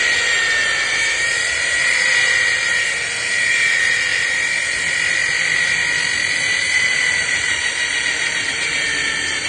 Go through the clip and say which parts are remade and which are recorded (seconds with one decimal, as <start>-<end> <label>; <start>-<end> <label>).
0.0-4.1 remade; 4.1-6.3 recorded; 6.3-7.7 remade; 7.7-8.5 recorded; 8.5-9.5 remade